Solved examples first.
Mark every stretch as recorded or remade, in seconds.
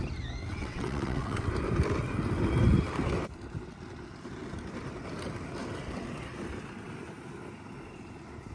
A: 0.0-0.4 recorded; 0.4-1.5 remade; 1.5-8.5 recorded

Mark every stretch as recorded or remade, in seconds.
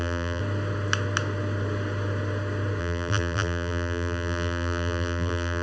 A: 0.0-0.4 remade; 0.4-2.8 recorded; 2.8-5.6 remade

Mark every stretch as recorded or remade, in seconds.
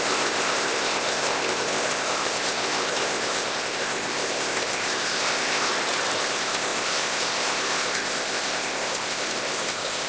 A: 0.0-5.7 remade; 5.7-6.2 recorded; 6.2-10.1 remade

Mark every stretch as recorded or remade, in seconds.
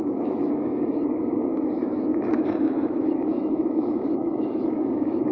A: 0.0-5.3 remade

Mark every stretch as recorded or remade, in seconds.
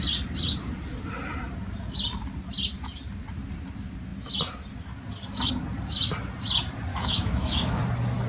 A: 0.0-6.9 recorded; 6.9-7.8 remade; 7.8-8.3 recorded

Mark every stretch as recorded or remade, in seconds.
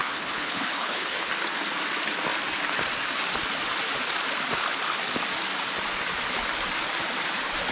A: 0.0-1.3 remade; 1.3-7.7 recorded